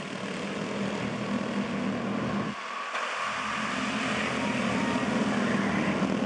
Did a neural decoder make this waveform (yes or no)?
no